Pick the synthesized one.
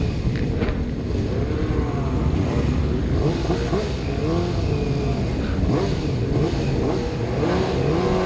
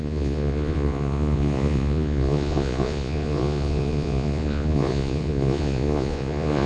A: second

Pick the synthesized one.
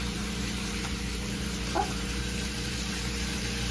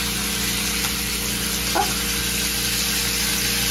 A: first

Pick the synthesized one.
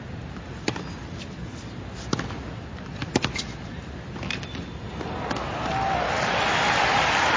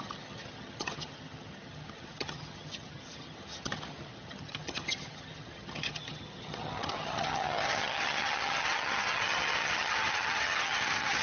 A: second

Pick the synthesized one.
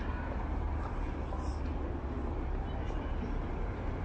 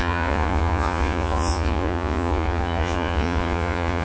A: second